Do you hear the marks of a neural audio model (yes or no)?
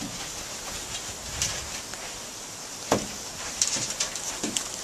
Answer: no